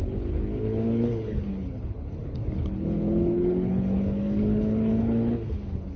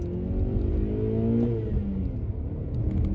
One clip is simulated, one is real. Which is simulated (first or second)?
first